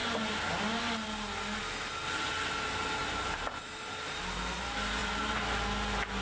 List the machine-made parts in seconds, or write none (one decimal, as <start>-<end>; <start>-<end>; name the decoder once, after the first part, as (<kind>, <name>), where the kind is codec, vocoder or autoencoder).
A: 5.0-5.6 (vocoder, BigVGAN v2)